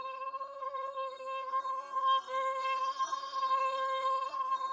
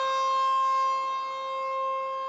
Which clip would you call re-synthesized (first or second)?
first